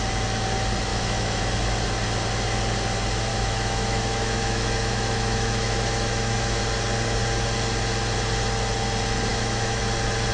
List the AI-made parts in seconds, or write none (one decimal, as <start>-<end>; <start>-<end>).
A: 0.9-1.4; 3.3-6.6; 9.3-9.8